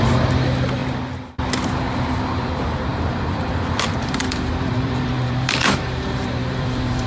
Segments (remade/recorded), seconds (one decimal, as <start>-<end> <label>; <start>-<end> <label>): 0.0-2.9 recorded; 2.9-7.1 remade